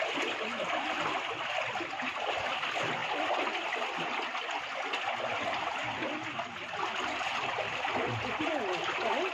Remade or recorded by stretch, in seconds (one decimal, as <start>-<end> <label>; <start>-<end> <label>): 0.0-9.3 recorded